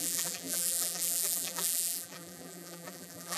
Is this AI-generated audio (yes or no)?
yes